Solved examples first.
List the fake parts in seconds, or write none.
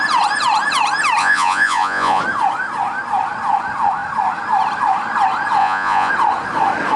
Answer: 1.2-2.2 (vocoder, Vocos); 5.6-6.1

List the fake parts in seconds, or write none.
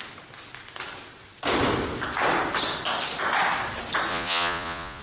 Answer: 4.1-5.0 (vocoder, Vocos)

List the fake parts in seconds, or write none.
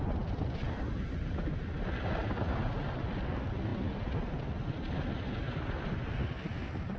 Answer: none